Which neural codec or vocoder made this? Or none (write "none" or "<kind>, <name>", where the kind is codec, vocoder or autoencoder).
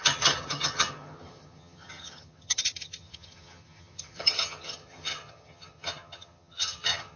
vocoder, HiFi-GAN